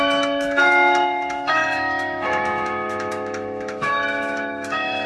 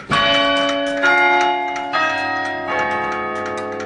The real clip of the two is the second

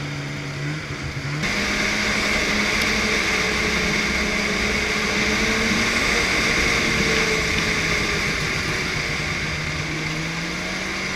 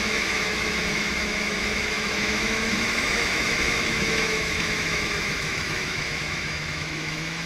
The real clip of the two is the first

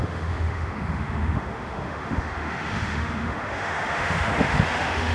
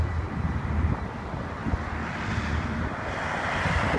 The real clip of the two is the second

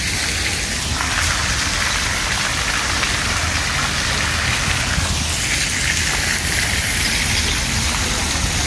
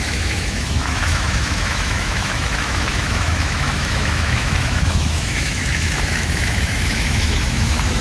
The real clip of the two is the first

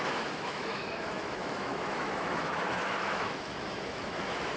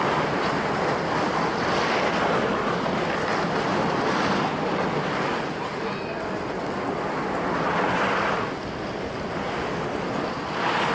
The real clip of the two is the second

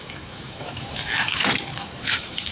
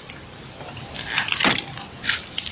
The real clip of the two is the second